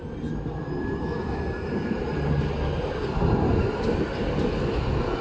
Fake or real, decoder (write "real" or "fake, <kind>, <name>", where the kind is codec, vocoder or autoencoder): real